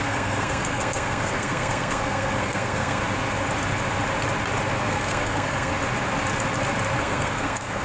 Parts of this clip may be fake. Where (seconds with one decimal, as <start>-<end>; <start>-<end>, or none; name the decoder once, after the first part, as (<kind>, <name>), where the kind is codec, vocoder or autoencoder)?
0.0-3.0 (codec, SNAC); 4.8-5.7; 7.0-7.8